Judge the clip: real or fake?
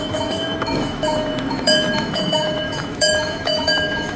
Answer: fake